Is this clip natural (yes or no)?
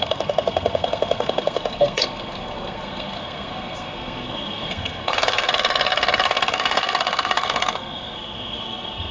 no